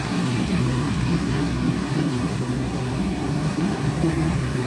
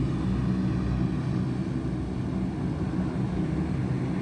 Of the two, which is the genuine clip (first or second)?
second